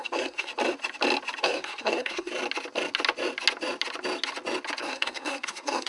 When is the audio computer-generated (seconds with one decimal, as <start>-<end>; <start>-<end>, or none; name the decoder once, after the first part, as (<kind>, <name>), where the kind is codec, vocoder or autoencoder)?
0.0-0.5 (codec, SNAC); 1.4-2.3; 4.8-5.9